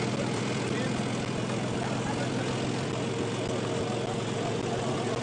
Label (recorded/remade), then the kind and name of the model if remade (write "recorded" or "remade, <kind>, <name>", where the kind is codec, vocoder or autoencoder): recorded